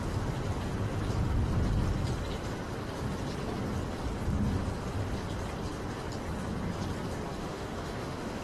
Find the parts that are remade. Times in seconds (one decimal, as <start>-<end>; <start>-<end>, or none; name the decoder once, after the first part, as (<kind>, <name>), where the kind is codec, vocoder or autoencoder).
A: 7.4-8.4 (autoencoder, DAC-VAE)